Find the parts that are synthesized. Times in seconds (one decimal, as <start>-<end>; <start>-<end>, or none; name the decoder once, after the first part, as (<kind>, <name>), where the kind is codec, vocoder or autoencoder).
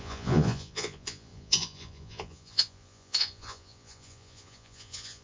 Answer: 0.0-5.2 (vocoder, Vocos)